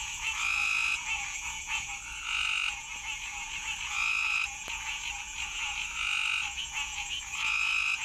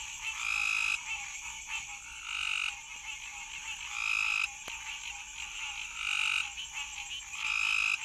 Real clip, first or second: second